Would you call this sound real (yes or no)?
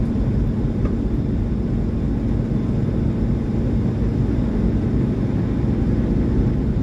yes